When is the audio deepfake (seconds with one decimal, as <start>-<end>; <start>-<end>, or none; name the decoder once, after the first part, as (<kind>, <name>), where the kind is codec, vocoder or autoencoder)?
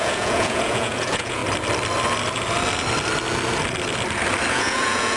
0.0-1.4 (vocoder, Vocos); 4.5-5.2